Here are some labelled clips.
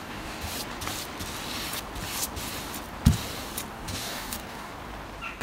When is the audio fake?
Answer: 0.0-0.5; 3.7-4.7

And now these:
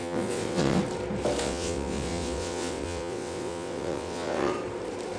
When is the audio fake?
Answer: 0.0-0.8; 1.4-4.5

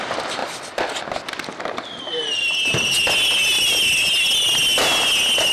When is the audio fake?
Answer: none

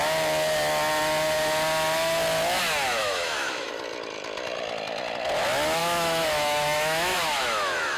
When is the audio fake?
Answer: 3.0-3.7; 5.8-8.0

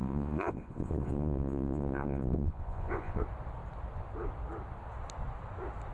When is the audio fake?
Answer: 0.0-3.2

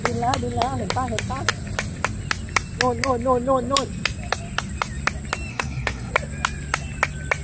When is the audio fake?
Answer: 5.5-6.1

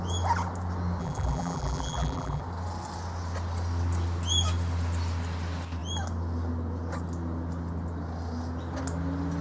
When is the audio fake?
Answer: 1.0-2.4